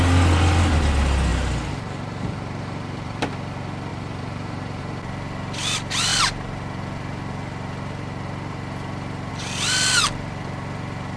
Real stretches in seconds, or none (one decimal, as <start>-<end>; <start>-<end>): 0.0-1.3; 3.2-3.9; 4.8-11.2